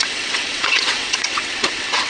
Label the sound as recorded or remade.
remade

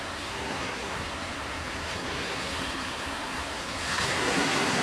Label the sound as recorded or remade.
remade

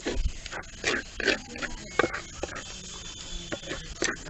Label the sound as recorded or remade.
recorded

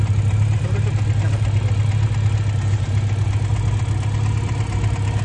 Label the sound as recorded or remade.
recorded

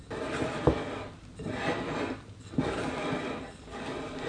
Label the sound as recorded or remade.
recorded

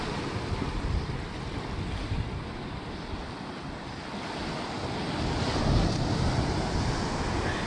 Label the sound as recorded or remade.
recorded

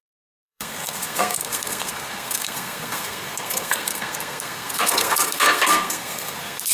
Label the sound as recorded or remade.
remade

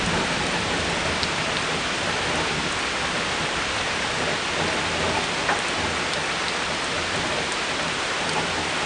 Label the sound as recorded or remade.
recorded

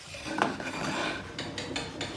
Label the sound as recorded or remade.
recorded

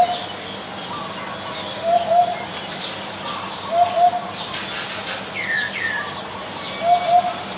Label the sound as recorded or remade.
recorded